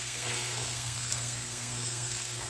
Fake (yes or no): yes